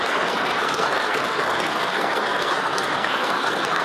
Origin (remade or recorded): remade